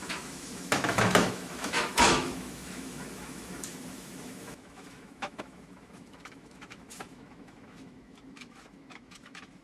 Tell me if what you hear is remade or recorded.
remade